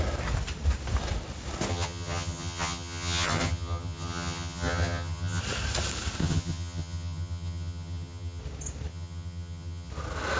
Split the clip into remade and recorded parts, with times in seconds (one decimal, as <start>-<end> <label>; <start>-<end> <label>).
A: 0.0-1.7 recorded; 1.7-5.4 remade; 5.4-6.2 recorded; 6.2-8.4 remade; 8.4-8.9 recorded; 8.9-9.9 remade; 9.9-10.4 recorded